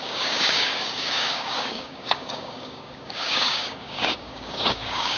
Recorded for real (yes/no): no